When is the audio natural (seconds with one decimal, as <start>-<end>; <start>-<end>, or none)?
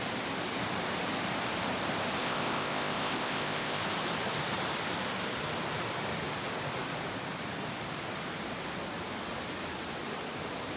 0.0-2.2; 3.8-10.8